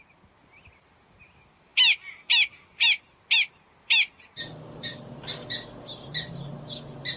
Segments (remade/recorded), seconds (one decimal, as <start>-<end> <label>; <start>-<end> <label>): 0.0-7.2 recorded